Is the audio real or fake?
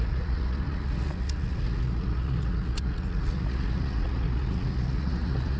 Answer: fake